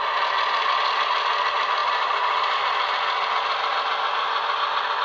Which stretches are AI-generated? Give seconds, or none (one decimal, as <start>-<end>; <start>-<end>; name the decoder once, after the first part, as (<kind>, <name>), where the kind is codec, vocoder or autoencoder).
none